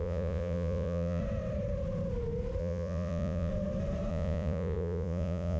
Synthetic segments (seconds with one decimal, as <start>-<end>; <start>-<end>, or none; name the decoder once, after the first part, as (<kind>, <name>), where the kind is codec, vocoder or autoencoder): 0.0-1.2 (vocoder, Vocos); 2.6-3.5; 4.1-5.6